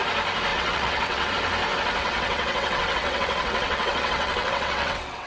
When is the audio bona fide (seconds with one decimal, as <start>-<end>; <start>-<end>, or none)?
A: 0.0-0.5; 1.3-2.0